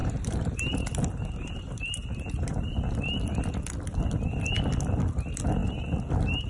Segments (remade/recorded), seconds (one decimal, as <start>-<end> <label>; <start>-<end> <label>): 0.0-2.7 remade; 2.7-6.5 recorded